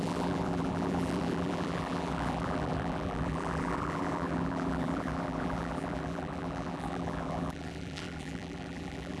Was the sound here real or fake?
fake